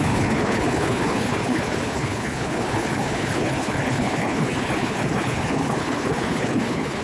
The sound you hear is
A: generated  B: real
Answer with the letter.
A